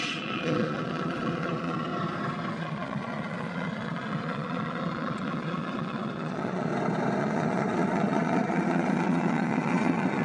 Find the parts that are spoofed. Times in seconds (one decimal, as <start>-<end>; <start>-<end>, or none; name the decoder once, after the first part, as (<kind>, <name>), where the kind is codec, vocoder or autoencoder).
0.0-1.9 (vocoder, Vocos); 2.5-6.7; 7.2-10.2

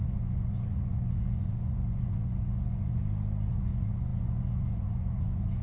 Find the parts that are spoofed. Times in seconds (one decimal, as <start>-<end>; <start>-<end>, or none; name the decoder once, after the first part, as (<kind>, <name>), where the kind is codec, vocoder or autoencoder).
0.0-3.0 (vocoder, Vocos); 3.5-5.6

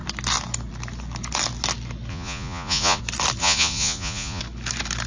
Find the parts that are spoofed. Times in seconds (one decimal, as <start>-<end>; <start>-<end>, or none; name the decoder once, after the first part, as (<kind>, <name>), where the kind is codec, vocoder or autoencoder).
2.1-3.0 (vocoder, Vocos); 3.4-4.4

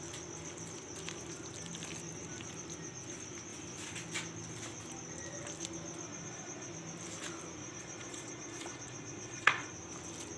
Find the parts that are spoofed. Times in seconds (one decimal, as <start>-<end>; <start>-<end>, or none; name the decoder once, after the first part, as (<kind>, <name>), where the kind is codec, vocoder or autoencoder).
6.1-6.7 (vocoder, Vocos); 7.6-9.7